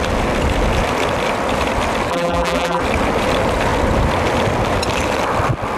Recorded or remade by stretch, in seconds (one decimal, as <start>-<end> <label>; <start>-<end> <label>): 0.0-2.1 recorded; 2.1-2.8 remade; 2.8-5.8 recorded